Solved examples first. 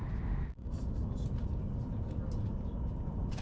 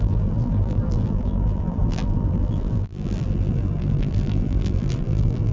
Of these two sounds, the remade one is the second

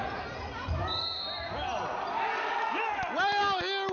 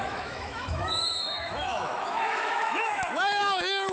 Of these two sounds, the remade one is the second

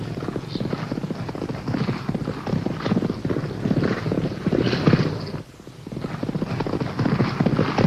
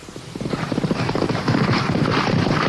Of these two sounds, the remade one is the second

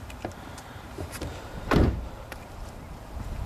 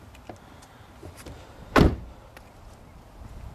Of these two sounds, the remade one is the first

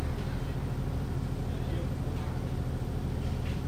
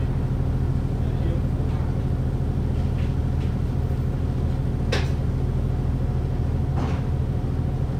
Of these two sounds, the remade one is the first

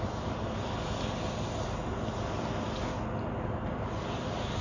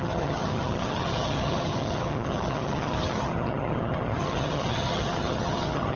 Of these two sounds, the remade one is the second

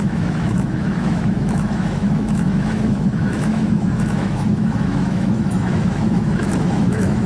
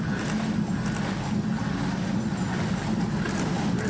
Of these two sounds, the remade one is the first